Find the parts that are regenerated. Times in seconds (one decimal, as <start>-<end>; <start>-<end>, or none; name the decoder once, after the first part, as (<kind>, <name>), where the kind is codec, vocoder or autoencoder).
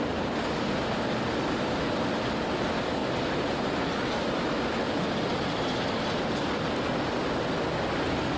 none